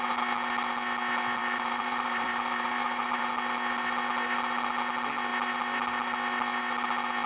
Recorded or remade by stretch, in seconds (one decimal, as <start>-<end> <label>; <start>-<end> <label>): 0.0-1.4 recorded; 1.4-3.2 remade; 3.2-7.3 recorded

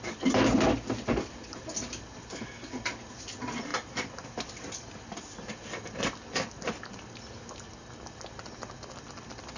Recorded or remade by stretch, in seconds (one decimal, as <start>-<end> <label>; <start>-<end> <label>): 0.0-9.6 recorded

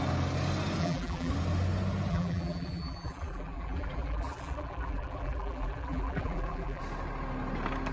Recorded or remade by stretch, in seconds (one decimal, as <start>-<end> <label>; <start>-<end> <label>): 0.0-0.8 recorded; 0.8-1.3 remade; 1.3-2.1 recorded; 2.1-6.8 remade; 6.8-7.9 recorded

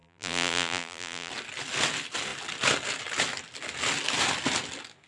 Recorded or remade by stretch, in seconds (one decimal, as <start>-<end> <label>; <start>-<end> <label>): 0.0-1.3 remade; 1.3-5.1 recorded

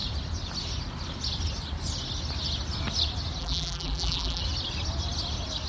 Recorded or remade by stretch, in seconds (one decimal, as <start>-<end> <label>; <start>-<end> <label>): 0.0-3.4 recorded; 3.4-4.4 remade; 4.4-5.7 recorded

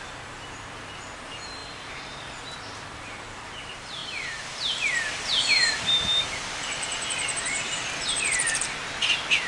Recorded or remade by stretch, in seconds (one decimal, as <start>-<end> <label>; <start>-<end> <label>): 0.0-8.8 remade; 8.8-9.5 recorded

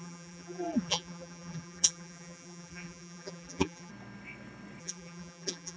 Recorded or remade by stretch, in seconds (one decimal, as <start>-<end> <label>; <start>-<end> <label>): 0.0-3.9 remade; 3.9-4.8 recorded; 4.8-5.8 remade